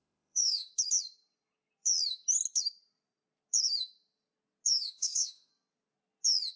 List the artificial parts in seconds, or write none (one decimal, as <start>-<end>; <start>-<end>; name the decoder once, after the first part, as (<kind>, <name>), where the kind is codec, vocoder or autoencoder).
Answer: 0.0-0.7 (autoencoder, DAC-VAE); 4.7-5.5